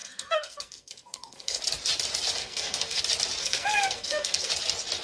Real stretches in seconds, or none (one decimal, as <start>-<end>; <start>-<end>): 1.6-2.4; 3.0-3.4; 4.5-5.0